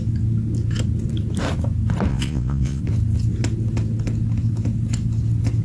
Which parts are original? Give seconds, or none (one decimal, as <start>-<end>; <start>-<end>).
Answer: 0.0-2.1; 2.8-5.6